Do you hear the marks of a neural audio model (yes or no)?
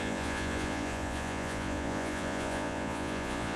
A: yes